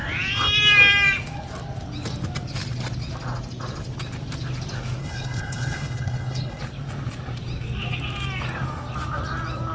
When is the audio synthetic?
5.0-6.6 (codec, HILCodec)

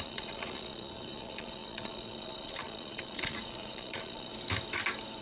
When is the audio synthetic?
0.0-4.3 (vocoder, Vocos)

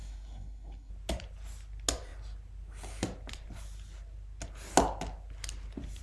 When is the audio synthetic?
0.0-0.9 (codec, SNAC)

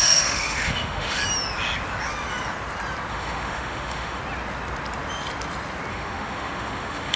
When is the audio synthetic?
0.0-1.2 (autoencoder, DAC-VAE); 3.1-4.2; 5.9-7.2